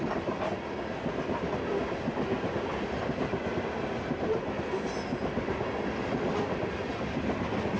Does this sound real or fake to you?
real